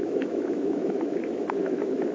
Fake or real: fake